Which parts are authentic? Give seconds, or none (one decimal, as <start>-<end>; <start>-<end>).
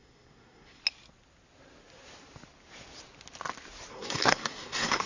0.8-3.9